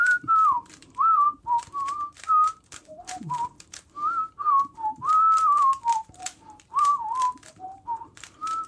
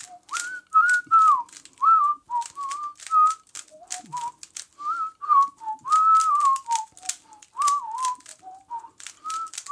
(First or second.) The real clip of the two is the second